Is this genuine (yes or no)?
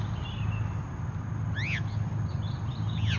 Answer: yes